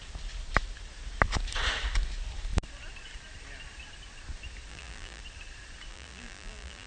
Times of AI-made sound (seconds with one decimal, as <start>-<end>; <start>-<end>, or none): 4.7-5.2; 5.9-6.9